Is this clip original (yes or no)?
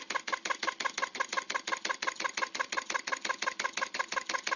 yes